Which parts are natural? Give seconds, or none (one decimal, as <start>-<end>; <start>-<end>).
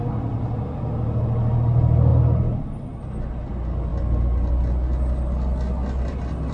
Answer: 0.0-6.5